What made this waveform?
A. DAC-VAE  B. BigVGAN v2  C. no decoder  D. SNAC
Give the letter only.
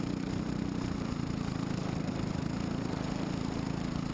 B